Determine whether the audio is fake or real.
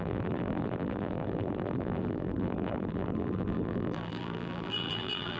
fake